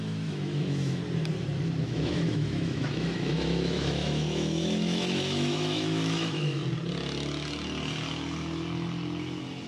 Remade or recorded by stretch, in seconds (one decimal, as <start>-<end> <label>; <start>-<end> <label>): 0.0-1.0 remade; 1.0-1.8 recorded; 1.8-6.6 remade; 6.6-9.7 recorded